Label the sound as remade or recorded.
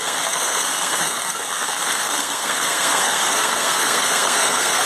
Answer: remade